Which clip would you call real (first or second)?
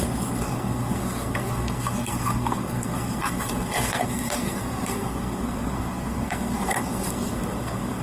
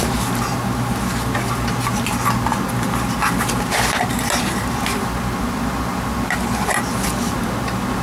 second